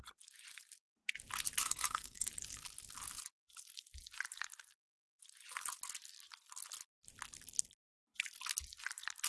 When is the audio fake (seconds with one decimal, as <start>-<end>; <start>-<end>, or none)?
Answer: 1.6-2.3